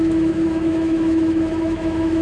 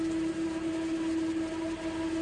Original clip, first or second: second